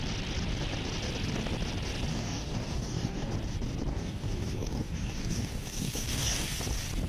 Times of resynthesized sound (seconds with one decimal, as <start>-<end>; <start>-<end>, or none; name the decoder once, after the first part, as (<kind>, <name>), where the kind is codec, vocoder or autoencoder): 2.1-3.3 (codec, DAC); 3.9-6.6

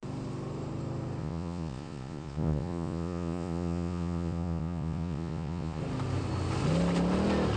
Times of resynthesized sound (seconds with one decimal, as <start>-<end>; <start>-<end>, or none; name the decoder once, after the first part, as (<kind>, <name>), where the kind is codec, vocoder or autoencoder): 1.2-5.8 (vocoder, Vocos)

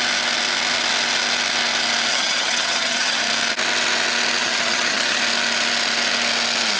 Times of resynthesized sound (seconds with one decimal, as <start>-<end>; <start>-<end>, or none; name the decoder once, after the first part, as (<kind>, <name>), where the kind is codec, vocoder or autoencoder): 2.1-3.2 (vocoder, HiFi-GAN); 4.4-5.2

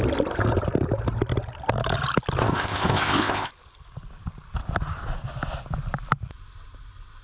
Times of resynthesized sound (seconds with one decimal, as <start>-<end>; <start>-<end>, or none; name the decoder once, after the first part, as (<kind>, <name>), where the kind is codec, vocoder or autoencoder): 2.4-3.5 (codec, ZipCodec)